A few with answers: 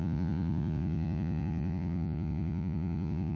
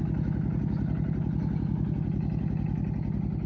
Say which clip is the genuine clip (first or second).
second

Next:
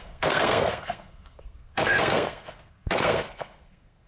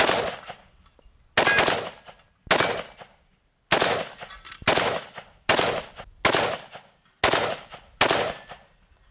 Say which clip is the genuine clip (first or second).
second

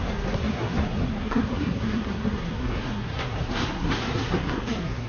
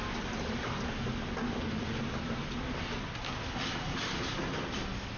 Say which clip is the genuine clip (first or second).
second